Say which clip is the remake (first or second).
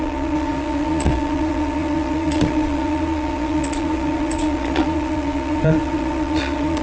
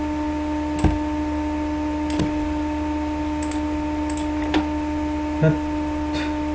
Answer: first